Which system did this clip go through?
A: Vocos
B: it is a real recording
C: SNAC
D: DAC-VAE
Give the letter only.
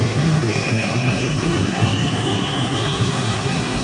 C